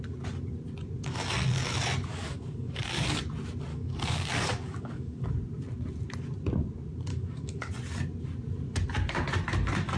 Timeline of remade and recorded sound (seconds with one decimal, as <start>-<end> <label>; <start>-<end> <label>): 0.0-2.1 recorded; 2.1-3.2 remade; 3.2-3.7 recorded; 3.7-5.3 remade; 5.3-7.1 recorded; 7.1-7.7 remade; 7.7-10.0 recorded